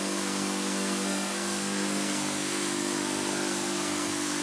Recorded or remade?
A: remade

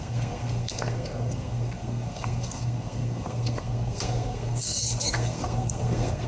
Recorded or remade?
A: remade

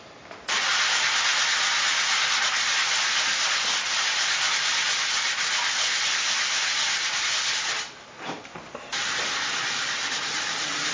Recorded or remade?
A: recorded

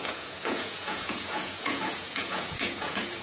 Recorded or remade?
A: remade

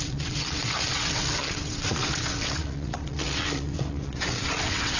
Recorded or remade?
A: remade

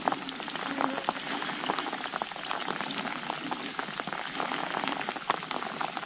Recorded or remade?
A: recorded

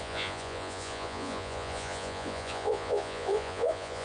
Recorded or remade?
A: remade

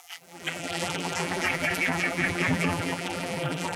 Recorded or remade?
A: remade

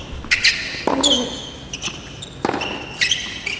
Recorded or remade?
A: recorded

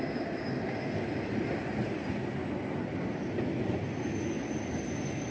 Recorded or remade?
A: recorded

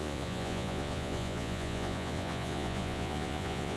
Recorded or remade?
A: remade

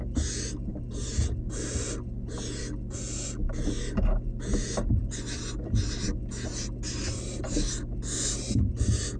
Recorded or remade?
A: recorded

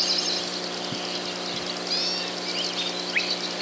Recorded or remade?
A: recorded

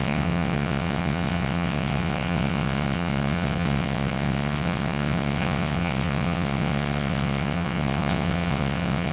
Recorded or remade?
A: remade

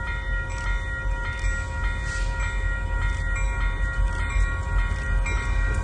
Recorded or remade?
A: recorded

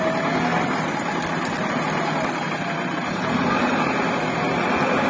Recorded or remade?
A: recorded